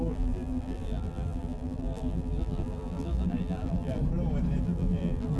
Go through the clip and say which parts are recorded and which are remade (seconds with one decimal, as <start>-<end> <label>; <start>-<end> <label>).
0.0-4.0 remade; 4.0-4.6 recorded; 4.6-5.4 remade